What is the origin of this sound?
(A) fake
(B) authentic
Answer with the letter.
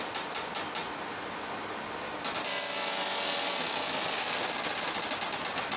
B